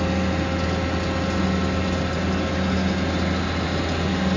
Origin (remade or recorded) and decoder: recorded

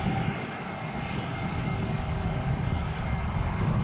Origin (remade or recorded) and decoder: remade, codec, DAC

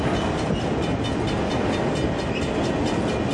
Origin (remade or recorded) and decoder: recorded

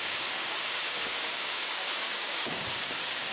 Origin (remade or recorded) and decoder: remade, codec, DAC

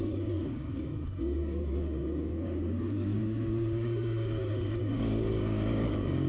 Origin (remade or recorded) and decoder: remade, codec, DAC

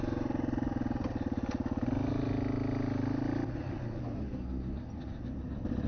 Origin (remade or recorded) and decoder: recorded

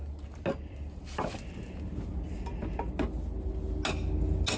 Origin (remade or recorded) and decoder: recorded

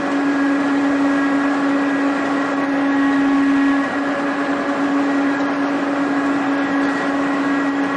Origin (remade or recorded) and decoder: recorded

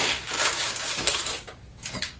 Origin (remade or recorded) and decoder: remade, codec, DAC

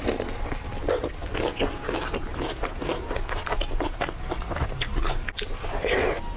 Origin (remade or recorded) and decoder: recorded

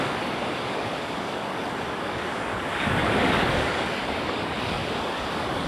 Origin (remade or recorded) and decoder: remade, codec, DAC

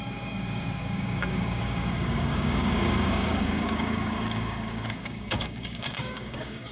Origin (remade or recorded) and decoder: remade, codec, DAC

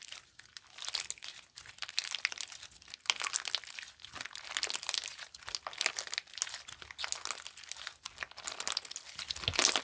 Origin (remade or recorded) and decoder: recorded